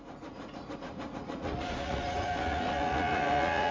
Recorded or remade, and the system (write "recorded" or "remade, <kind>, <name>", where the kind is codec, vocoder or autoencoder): remade, vocoder, Vocos